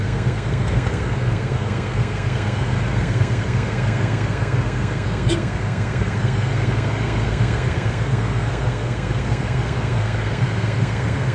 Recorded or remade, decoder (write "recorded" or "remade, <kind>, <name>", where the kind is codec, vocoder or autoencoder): remade, codec, SNAC